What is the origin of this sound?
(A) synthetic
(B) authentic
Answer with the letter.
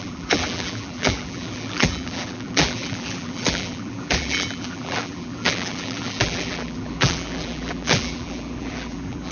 A